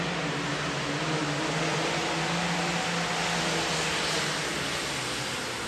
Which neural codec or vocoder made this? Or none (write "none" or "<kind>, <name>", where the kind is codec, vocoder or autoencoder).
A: none